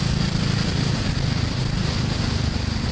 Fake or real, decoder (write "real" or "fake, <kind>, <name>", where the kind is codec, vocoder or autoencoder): real